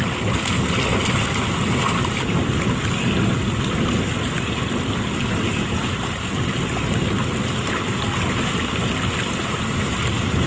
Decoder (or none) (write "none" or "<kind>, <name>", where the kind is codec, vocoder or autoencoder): none